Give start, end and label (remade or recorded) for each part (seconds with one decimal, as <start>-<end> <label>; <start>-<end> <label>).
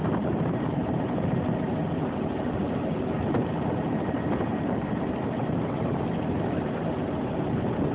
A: 0.0-1.3 remade; 1.3-4.5 recorded; 4.5-6.0 remade; 6.0-7.9 recorded